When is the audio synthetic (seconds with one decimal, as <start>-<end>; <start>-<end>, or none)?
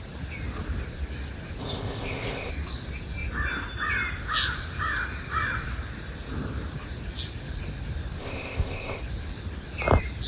1.6-2.5; 8.2-9.0